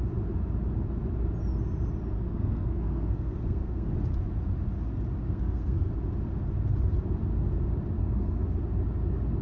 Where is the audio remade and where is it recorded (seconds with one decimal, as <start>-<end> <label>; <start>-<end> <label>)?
0.0-2.3 recorded; 2.3-3.9 remade; 3.9-5.2 recorded; 5.2-5.9 remade; 5.9-8.0 recorded; 8.0-8.6 remade; 8.6-9.4 recorded